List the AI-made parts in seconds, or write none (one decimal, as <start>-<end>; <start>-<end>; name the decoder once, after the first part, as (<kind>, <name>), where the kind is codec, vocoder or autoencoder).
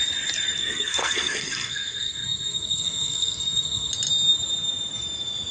0.6-3.9 (codec, SNAC)